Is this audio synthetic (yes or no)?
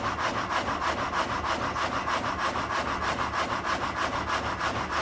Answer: no